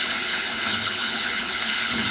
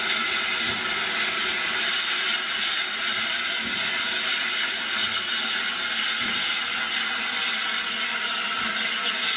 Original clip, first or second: second